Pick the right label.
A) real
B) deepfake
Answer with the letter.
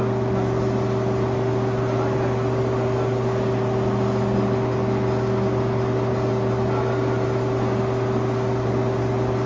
A